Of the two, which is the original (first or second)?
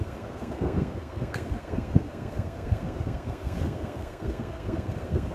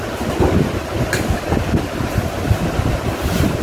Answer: second